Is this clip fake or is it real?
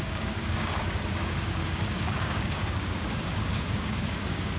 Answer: fake